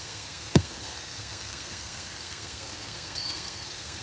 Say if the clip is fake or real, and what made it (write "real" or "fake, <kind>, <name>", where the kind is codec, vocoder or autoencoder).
fake, codec, SNAC